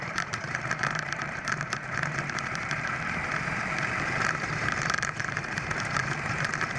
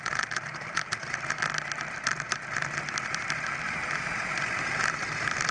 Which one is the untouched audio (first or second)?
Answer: second